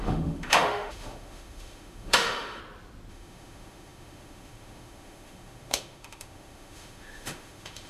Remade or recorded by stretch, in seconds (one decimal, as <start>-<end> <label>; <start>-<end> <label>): 0.0-2.6 remade; 2.6-3.1 recorded; 3.1-7.9 remade

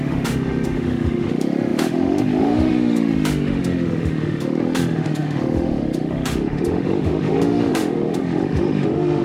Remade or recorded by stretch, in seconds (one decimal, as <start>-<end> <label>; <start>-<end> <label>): 0.0-9.2 remade

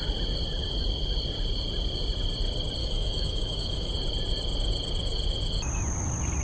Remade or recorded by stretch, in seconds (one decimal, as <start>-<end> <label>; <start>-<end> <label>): 0.0-2.8 recorded; 2.8-3.9 remade; 3.9-6.4 recorded

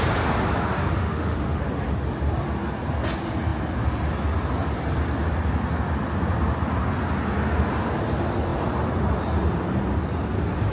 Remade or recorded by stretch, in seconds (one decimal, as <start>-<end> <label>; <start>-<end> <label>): 0.0-1.0 recorded; 1.0-1.6 remade; 1.6-10.7 recorded

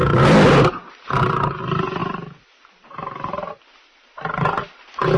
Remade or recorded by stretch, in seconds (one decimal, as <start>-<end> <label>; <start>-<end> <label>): 0.0-5.2 recorded

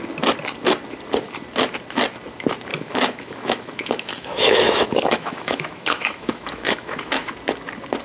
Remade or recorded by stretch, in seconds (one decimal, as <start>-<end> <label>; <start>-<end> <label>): 0.0-2.7 recorded; 2.7-7.3 remade; 7.3-8.0 recorded

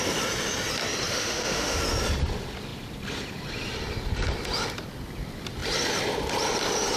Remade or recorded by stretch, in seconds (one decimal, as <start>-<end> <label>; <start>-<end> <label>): 0.0-1.1 recorded; 1.1-1.8 remade; 1.8-7.0 recorded

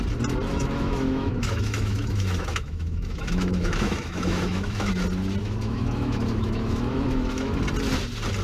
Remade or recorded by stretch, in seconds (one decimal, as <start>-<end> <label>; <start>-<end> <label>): 0.0-0.5 recorded; 0.5-4.9 remade; 4.9-5.4 recorded; 5.4-7.6 remade; 7.6-8.4 recorded